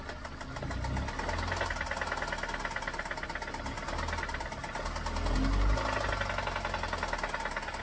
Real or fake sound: real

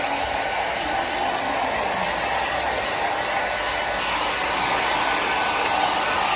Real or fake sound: real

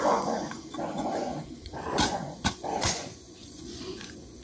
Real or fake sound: fake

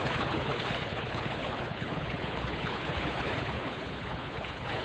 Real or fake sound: fake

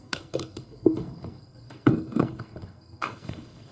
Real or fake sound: fake